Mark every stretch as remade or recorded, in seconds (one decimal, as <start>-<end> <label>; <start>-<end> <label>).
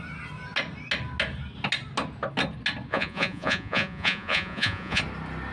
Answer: 0.0-2.9 recorded; 2.9-5.0 remade; 5.0-5.5 recorded